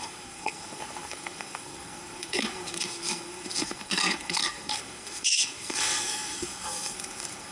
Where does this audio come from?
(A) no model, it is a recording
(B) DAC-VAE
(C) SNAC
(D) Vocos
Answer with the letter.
C